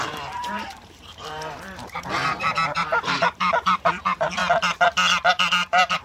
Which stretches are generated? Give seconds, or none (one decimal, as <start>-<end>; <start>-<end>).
0.0-4.4; 5.3-6.0